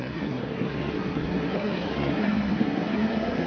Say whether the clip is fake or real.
fake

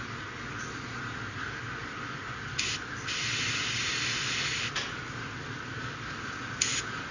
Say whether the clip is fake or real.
real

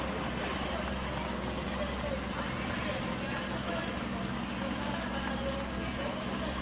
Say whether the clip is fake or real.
real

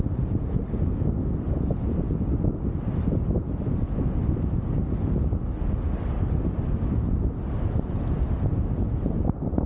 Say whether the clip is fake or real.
real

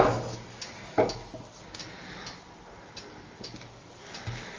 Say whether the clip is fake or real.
real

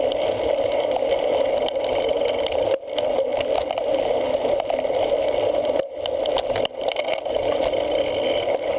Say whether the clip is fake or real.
real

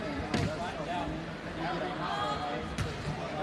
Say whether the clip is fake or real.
real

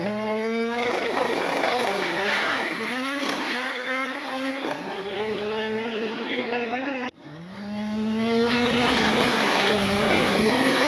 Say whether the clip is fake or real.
fake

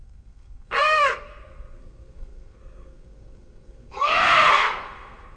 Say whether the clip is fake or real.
fake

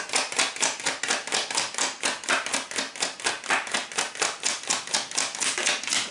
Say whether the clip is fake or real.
real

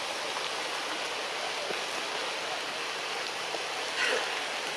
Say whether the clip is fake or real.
real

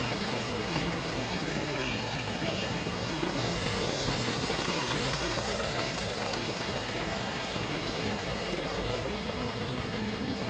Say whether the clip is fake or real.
fake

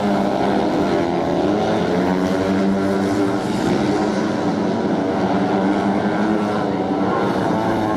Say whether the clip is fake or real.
real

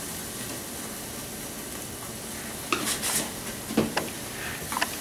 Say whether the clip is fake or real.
real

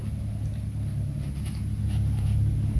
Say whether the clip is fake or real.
real